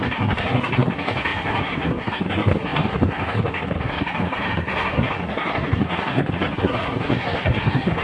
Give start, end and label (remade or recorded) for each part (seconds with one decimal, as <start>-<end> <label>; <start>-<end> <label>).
0.0-8.0 remade